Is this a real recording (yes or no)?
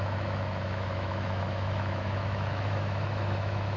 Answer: no